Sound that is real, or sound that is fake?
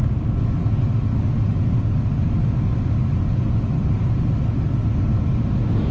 real